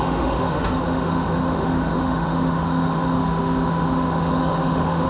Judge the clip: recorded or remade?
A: remade